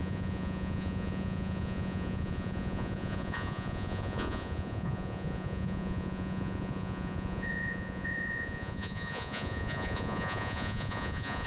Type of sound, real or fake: fake